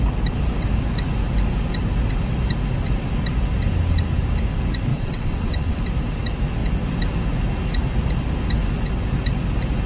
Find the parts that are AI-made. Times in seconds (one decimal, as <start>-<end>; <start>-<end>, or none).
4.9-5.8